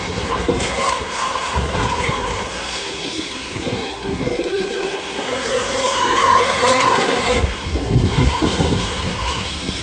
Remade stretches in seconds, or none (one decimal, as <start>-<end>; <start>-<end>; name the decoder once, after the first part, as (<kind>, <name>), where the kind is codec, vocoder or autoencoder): 0.0-9.8 (codec, SNAC)